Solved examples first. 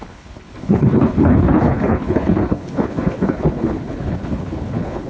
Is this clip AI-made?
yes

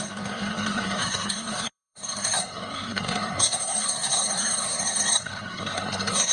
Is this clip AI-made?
yes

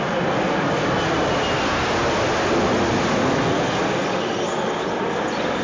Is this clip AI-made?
no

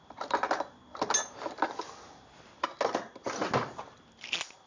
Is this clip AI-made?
no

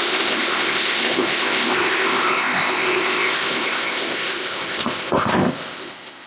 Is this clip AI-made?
yes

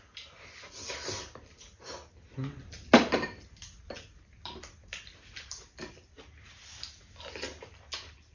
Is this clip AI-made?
no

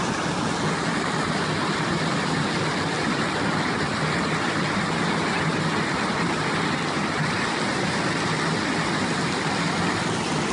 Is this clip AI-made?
no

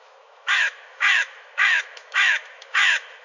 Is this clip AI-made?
yes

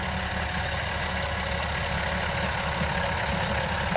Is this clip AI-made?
no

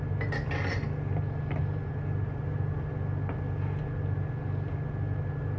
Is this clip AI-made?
no